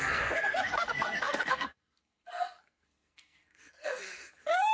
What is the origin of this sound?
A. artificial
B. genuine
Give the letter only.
A